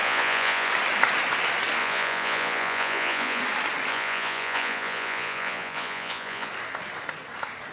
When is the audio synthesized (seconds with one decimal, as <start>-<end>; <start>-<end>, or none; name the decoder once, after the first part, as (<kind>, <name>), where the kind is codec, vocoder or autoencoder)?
0.0-0.7 (vocoder, Vocos); 1.8-3.4; 3.9-6.5